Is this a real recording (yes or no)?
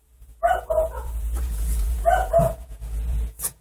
no